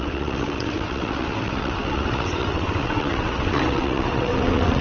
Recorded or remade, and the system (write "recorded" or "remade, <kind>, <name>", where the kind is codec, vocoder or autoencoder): remade, vocoder, WaveNeXt